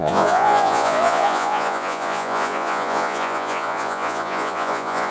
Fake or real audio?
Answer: fake